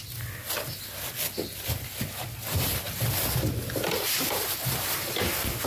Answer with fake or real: real